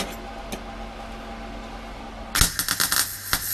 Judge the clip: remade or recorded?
recorded